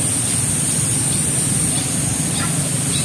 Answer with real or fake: real